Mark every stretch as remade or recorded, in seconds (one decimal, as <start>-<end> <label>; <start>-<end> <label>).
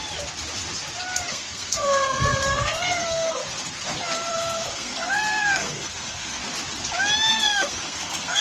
0.0-1.3 recorded; 1.3-3.4 remade; 3.4-4.3 recorded; 4.3-6.4 remade; 6.4-7.3 recorded; 7.3-8.4 remade